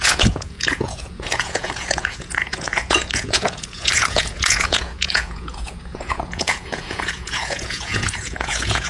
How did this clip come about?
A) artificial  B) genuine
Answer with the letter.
A